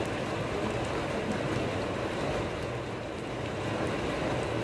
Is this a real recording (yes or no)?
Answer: yes